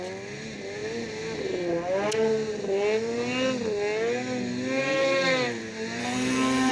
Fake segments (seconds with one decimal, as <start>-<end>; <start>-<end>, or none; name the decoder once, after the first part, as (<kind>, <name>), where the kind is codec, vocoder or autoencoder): 6.0-6.7 (codec, SNAC)